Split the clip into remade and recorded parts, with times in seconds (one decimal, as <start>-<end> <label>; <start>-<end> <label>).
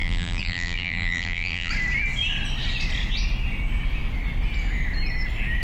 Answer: 0.0-1.7 remade; 1.7-5.6 recorded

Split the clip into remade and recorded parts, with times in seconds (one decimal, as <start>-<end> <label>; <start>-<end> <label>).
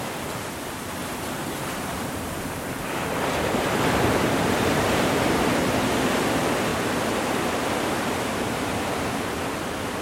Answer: 0.0-1.0 recorded; 1.0-5.7 remade; 5.7-6.7 recorded; 6.7-9.1 remade; 9.1-10.0 recorded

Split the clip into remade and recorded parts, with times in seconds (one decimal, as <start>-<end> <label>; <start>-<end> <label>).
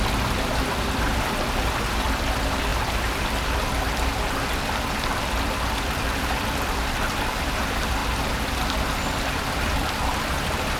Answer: 0.0-10.8 remade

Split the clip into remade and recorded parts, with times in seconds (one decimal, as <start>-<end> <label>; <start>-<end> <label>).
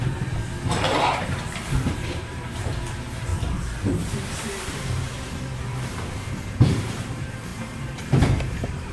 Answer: 0.0-0.4 remade; 0.4-1.3 recorded; 1.3-3.3 remade; 3.3-4.7 recorded; 4.7-8.9 remade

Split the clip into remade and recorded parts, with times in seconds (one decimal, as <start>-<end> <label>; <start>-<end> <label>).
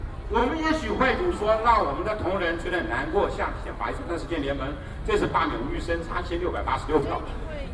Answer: 0.0-7.7 recorded